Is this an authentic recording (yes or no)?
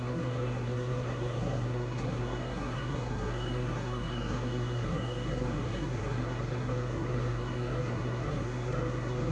no